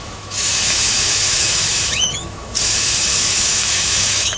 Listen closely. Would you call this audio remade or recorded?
remade